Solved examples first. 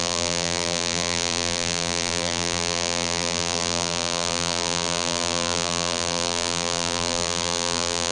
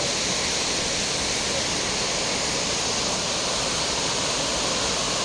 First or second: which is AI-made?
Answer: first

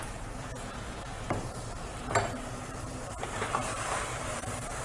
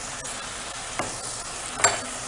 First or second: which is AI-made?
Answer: first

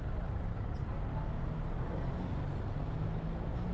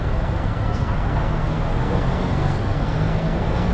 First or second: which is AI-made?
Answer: second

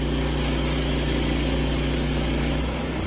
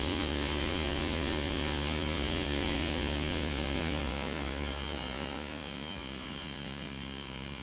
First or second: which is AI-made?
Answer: second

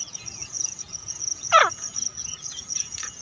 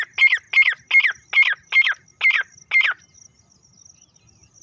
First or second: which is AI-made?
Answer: first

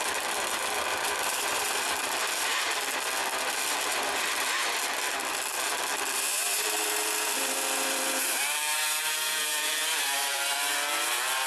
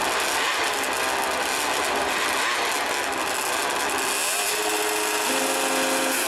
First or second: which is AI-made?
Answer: first